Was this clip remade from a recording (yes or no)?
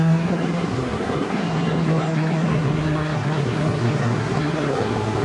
yes